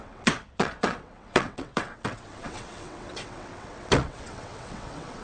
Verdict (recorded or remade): remade